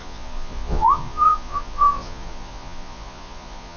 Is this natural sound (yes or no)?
no